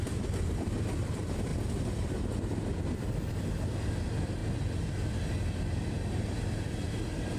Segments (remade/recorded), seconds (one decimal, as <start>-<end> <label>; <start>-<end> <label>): 0.0-1.5 remade; 1.5-2.9 recorded; 2.9-4.4 remade; 4.4-7.4 recorded